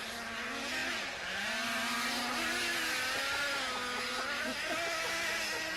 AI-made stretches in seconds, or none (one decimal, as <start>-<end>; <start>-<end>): none